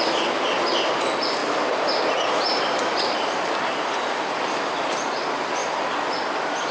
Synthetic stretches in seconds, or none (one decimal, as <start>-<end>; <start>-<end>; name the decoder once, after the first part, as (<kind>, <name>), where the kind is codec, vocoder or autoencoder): none